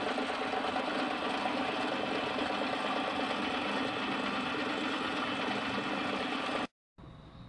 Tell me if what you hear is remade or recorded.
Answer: recorded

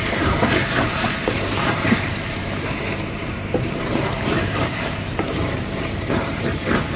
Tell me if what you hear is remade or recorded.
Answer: remade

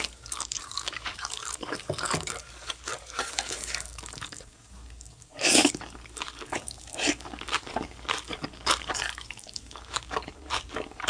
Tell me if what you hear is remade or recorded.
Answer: remade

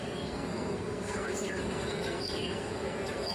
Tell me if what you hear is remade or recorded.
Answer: remade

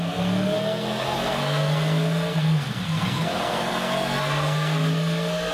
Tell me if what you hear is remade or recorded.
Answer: remade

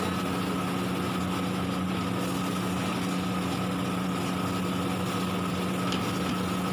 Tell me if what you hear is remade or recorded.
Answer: recorded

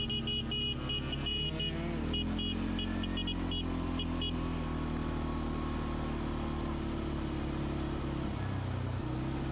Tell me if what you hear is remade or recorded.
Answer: recorded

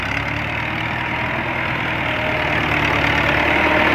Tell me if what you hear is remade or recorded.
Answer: recorded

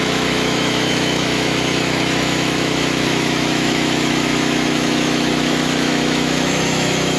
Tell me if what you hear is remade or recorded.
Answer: remade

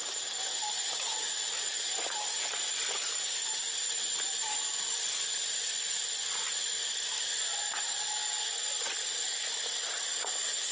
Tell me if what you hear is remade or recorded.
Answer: recorded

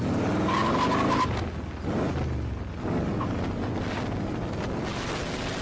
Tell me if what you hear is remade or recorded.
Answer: recorded